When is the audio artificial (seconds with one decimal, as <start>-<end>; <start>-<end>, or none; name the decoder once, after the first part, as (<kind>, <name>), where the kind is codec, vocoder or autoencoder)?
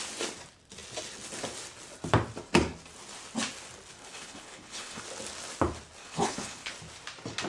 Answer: 4.0-5.0 (codec, HILCodec); 6.0-6.7